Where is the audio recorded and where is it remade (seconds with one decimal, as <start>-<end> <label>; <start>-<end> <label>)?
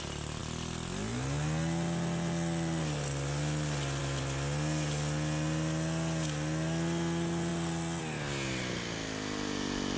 0.0-10.0 recorded